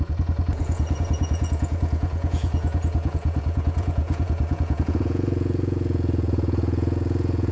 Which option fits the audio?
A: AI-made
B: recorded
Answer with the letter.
A